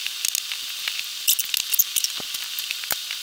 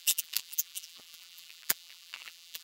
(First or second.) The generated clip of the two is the second